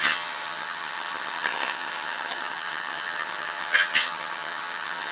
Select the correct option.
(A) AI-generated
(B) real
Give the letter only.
A